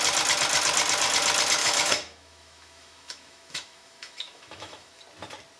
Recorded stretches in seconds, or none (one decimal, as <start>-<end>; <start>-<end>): 0.0-1.6; 5.0-5.6